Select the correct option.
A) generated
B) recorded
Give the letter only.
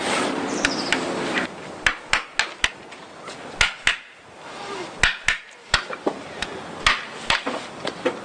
B